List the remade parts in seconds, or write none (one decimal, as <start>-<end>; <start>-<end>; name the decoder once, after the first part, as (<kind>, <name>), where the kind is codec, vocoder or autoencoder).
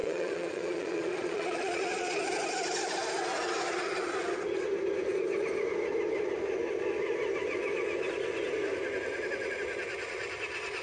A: 0.0-2.2 (vocoder, Vocos)